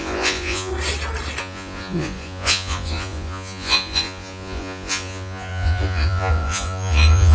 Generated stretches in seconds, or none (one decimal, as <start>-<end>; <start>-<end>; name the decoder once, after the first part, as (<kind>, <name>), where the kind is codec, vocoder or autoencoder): 0.0-0.7 (vocoder, Vocos); 1.4-7.3

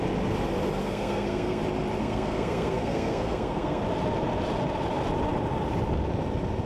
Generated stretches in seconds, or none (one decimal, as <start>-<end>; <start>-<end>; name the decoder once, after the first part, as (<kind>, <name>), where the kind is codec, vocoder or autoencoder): 0.8-1.6 (codec, SNAC); 2.0-3.8

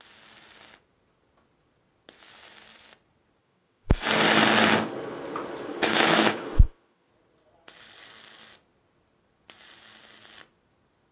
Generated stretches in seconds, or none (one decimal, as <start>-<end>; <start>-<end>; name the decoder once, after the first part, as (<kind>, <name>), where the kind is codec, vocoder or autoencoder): 3.4-4.0 (autoencoder, DAC-VAE); 5.7-7.1

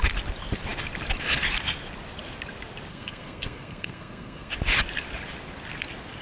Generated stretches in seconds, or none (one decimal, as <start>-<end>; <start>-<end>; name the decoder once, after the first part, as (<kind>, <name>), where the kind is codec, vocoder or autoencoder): 2.9-4.5 (codec, SNAC)

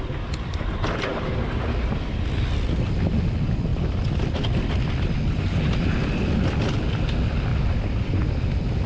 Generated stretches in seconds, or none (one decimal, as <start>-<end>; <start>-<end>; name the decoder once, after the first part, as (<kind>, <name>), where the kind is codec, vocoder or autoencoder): 3.7-6.0 (vocoder, BigVGAN v2); 7.5-8.5

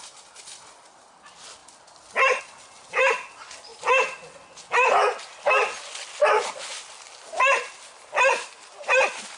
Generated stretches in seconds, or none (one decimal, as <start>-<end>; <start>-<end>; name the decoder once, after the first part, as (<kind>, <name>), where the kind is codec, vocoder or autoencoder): none

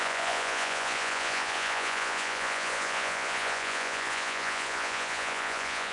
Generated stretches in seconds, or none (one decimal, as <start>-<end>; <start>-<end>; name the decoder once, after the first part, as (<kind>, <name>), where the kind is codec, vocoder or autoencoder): 0.0-5.9 (vocoder, Vocos)

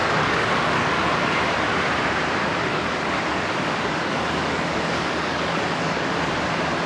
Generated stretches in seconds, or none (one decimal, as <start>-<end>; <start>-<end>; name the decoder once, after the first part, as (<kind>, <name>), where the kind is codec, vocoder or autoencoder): 0.0-1.0 (codec, DAC); 2.7-6.4